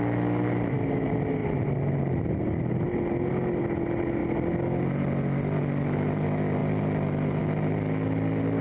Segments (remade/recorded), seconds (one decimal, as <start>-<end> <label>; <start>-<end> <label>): 0.0-8.6 recorded